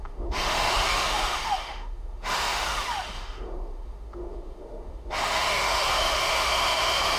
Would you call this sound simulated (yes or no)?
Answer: yes